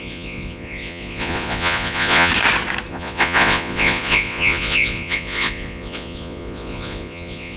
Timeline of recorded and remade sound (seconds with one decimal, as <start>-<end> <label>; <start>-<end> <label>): 0.0-2.3 remade; 2.3-2.9 recorded; 2.9-7.6 remade